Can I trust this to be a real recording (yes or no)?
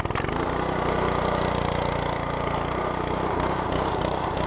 no